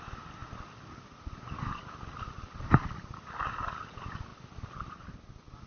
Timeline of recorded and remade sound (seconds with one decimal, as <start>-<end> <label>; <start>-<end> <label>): 0.0-5.7 recorded